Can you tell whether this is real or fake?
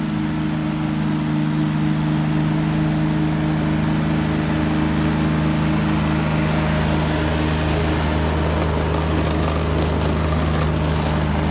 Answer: real